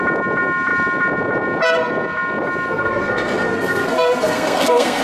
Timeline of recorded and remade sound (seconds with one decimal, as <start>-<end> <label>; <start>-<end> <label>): 0.0-2.7 recorded; 2.7-5.0 remade